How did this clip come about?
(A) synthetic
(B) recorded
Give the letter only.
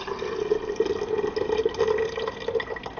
B